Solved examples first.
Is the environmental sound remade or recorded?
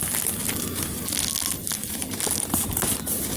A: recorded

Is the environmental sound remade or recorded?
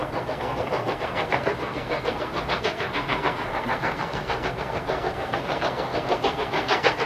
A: remade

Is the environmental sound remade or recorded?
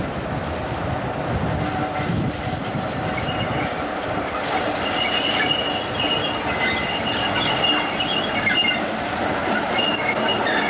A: recorded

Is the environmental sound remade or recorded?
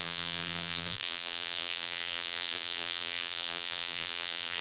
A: remade